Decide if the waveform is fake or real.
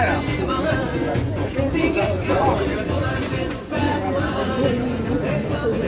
fake